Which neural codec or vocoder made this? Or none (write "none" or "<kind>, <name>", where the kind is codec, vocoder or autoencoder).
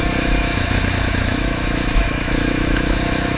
autoencoder, DAC-VAE